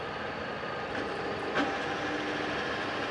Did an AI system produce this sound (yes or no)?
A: no